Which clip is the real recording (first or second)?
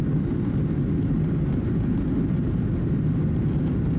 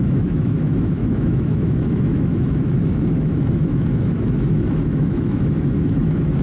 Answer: first